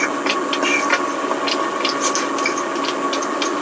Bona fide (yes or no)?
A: yes